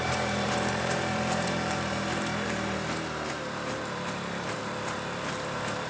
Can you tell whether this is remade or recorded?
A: remade